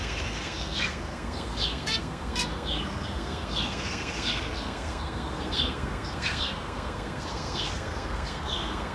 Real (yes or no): no